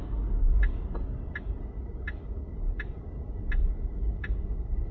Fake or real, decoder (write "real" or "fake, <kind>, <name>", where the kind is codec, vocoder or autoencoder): real